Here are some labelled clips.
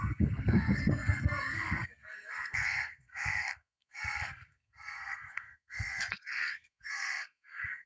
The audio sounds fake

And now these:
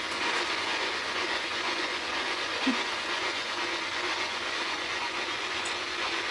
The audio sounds fake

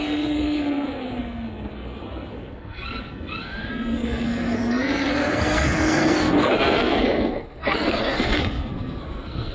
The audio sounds fake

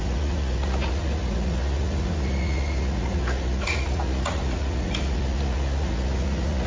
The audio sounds fake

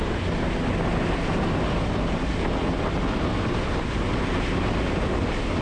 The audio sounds real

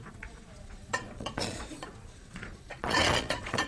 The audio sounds fake